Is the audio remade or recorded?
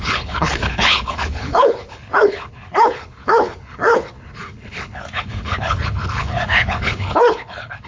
remade